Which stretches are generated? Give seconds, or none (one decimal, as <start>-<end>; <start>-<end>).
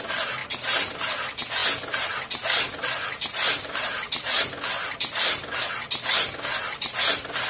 none